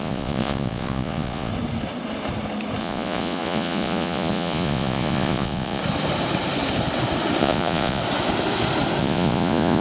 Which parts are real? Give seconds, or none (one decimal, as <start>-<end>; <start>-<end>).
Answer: 1.5-2.8; 5.8-7.4; 8.0-9.0